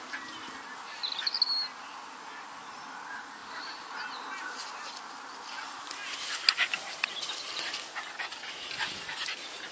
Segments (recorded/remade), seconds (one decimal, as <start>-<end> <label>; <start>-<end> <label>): 0.0-9.7 recorded